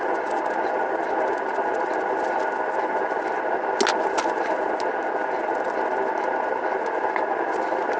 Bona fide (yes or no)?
yes